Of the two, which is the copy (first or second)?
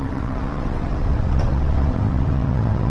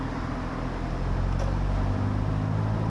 first